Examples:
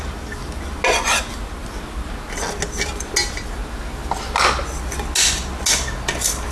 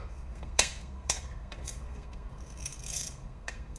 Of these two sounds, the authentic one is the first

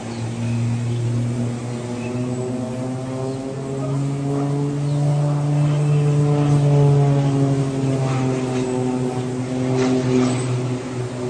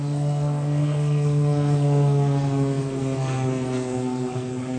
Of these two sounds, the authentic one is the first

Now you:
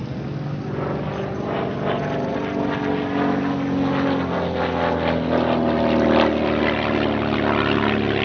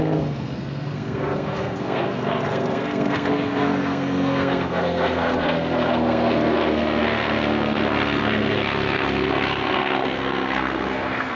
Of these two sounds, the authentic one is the first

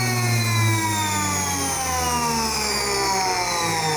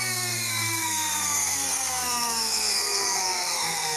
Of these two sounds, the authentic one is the first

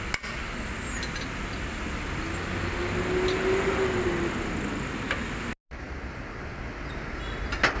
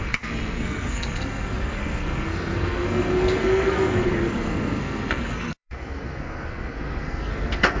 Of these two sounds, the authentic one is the first